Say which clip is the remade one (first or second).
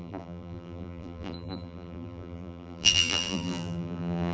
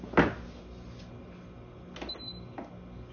first